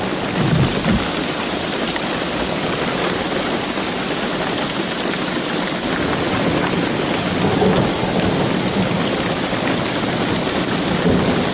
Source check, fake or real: real